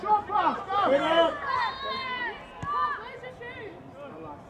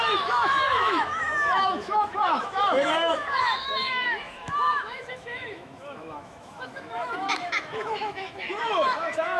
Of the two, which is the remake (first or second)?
second